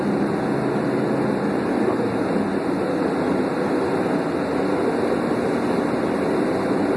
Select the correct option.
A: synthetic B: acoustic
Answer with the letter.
B